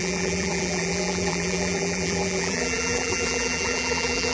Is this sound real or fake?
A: fake